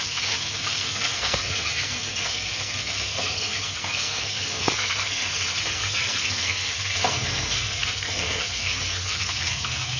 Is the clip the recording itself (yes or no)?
no